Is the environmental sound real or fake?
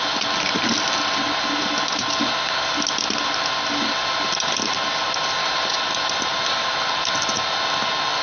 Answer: real